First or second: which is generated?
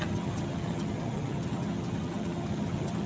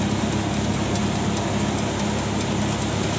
first